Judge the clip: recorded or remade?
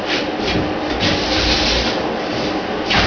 recorded